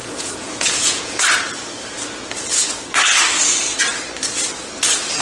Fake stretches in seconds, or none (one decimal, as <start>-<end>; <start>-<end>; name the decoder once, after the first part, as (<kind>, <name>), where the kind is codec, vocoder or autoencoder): 0.0-1.2 (vocoder, Vocos)